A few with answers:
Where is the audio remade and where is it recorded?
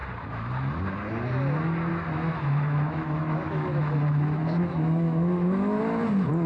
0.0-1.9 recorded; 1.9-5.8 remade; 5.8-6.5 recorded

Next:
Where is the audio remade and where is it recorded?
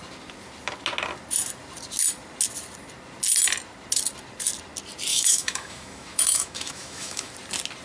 0.0-5.1 recorded; 5.1-7.3 remade; 7.3-7.8 recorded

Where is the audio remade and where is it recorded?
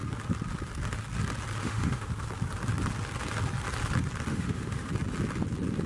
0.0-1.6 recorded; 1.6-2.1 remade; 2.1-4.3 recorded; 4.3-4.9 remade; 4.9-5.9 recorded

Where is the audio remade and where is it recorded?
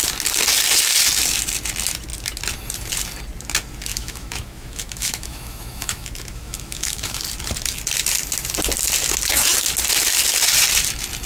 0.0-3.9 recorded; 3.9-7.2 remade; 7.2-11.3 recorded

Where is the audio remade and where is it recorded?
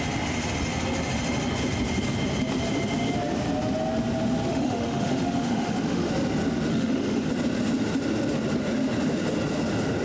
0.0-4.5 recorded; 4.5-6.1 remade; 6.1-6.7 recorded; 6.7-7.3 remade; 7.3-10.0 recorded